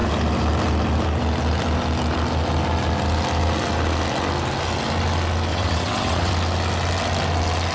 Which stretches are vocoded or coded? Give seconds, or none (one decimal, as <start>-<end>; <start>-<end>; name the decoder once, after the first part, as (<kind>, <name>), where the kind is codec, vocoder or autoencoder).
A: 5.5-6.3 (vocoder, WaveNeXt)

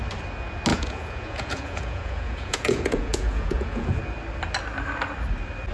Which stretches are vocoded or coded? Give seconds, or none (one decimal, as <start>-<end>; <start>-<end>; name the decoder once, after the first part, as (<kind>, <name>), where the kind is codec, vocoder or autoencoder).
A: 0.7-4.0 (vocoder, Vocos)

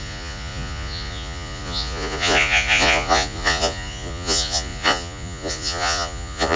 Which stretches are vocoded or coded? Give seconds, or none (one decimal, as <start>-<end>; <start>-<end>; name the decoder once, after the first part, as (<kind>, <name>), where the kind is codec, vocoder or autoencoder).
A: 0.0-6.6 (vocoder, Vocos)

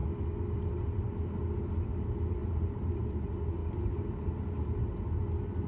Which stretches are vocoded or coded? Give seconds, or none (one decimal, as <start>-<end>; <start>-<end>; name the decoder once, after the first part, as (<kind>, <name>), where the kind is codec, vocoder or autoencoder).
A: 2.4-3.2 (vocoder, BigVGAN v2)